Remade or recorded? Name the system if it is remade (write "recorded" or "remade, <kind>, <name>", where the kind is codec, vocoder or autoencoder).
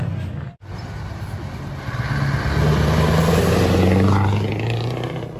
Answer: recorded